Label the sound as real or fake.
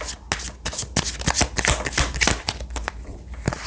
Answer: real